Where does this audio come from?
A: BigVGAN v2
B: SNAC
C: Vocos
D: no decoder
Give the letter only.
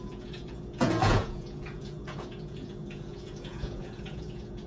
C